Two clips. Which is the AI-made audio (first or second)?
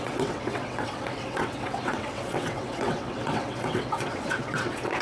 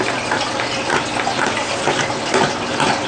first